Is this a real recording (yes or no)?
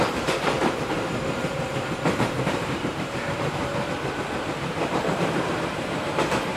no